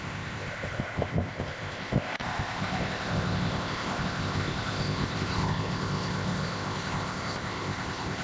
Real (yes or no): no